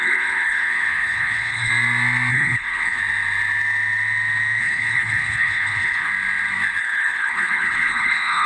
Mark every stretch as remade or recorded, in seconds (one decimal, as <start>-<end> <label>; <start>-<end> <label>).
0.0-1.7 remade; 1.7-2.3 recorded; 2.3-3.0 remade; 3.0-4.6 recorded; 4.6-6.1 remade; 6.1-6.8 recorded; 6.8-8.5 remade